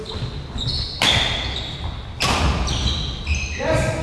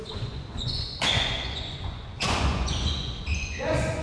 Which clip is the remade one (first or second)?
second